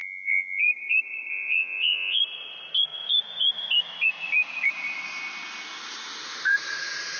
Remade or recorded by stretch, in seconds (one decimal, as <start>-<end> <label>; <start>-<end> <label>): 0.0-0.6 remade; 0.6-1.3 recorded; 1.3-2.2 remade; 2.2-7.2 recorded